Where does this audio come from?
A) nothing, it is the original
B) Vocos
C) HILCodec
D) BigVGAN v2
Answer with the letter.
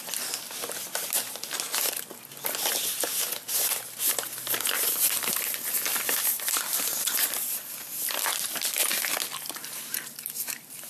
A